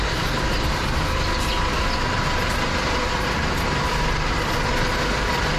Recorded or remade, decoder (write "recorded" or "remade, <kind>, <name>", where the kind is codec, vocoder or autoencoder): remade, vocoder, BigVGAN v2